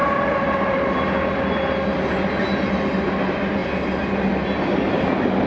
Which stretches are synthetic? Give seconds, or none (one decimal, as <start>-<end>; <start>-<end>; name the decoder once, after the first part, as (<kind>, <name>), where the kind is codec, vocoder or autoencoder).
0.0-0.9 (vocoder, BigVGAN v2)